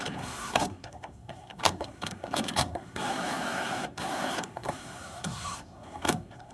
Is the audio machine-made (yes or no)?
yes